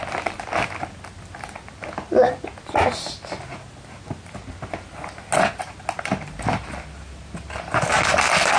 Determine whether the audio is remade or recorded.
recorded